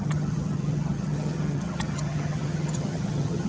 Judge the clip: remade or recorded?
remade